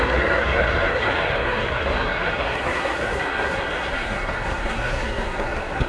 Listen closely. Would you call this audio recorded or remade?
remade